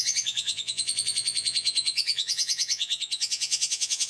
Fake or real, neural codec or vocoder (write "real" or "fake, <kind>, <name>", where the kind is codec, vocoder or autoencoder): fake, vocoder, Vocos